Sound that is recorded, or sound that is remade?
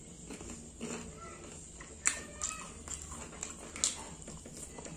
recorded